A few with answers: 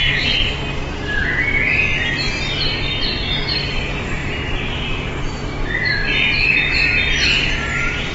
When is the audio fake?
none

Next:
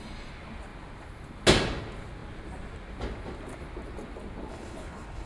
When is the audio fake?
4.5-5.3 (codec, HILCodec)

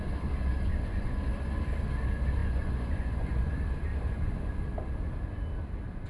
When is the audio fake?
0.7-1.3 (vocoder, Vocos); 2.4-3.5; 3.9-4.6

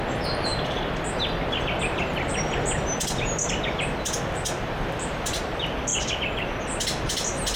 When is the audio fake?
none

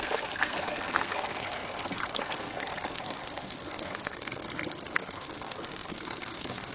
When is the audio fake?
0.0-4.4 (codec, SNAC); 4.9-6.7

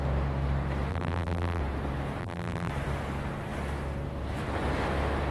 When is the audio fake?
0.9-1.6 (vocoder, BigVGAN v2); 2.2-2.7